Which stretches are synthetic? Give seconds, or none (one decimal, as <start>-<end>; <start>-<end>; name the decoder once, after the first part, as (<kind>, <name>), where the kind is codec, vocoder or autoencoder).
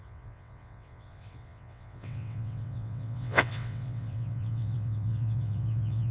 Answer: 0.0-6.1 (vocoder, WaveNeXt)